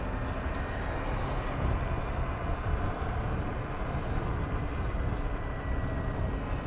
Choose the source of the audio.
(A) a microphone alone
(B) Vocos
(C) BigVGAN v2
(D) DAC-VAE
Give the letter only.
A